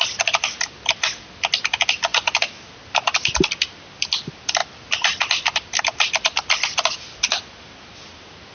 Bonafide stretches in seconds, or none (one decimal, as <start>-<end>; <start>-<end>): 0.0-8.5